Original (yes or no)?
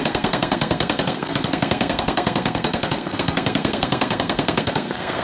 no